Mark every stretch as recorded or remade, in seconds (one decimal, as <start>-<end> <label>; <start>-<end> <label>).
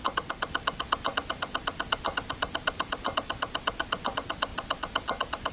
0.0-5.5 recorded